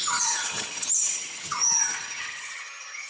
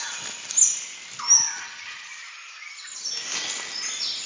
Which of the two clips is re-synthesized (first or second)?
first